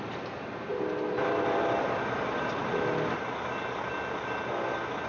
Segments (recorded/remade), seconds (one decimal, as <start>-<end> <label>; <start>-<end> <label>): 0.0-5.1 recorded